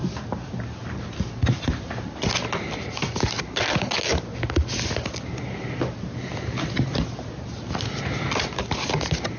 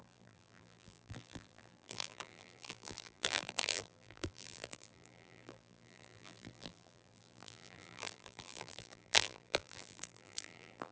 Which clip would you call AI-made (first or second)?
second